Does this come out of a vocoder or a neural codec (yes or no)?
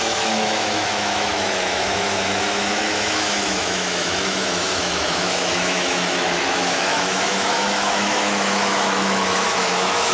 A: yes